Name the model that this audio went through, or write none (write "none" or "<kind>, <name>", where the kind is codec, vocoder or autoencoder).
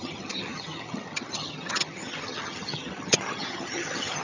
vocoder, HiFi-GAN